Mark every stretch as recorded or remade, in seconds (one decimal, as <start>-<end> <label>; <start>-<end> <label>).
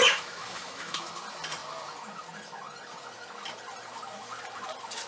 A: 0.0-1.1 remade; 1.1-5.1 recorded